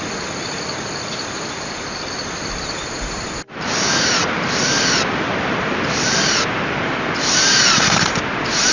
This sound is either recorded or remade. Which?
recorded